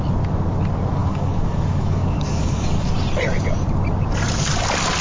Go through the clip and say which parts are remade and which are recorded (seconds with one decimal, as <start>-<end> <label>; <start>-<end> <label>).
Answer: 0.0-1.0 recorded; 1.0-2.9 remade; 2.9-5.0 recorded